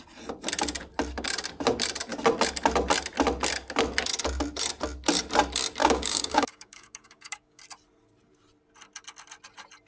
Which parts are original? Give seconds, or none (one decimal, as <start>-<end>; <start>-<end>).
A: 0.0-5.8; 7.6-9.9